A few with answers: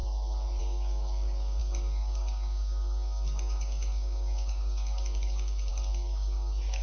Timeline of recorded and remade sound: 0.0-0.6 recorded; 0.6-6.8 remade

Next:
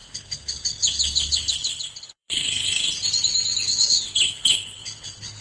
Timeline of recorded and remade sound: 0.0-2.9 remade; 2.9-3.7 recorded; 3.7-5.4 remade

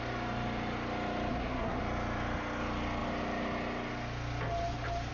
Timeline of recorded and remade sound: 0.0-1.3 recorded; 1.3-1.8 remade; 1.8-5.1 recorded

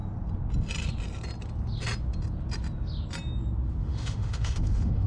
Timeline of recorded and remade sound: 0.0-3.8 recorded; 3.8-5.1 remade

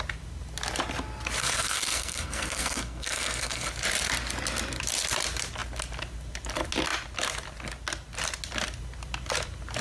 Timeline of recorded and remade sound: 0.0-1.4 recorded; 1.4-3.7 remade; 3.7-9.8 recorded

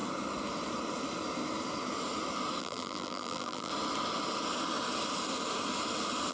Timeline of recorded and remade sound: 0.0-2.6 recorded; 2.6-3.7 remade; 3.7-6.3 recorded